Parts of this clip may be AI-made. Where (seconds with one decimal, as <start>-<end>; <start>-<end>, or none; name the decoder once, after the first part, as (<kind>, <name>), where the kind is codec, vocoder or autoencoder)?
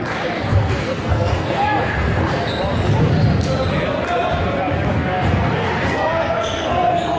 0.5-2.4 (codec, SNAC); 4.9-7.2